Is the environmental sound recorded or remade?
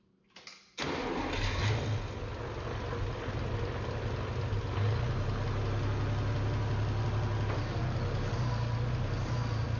recorded